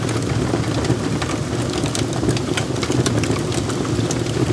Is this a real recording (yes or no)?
yes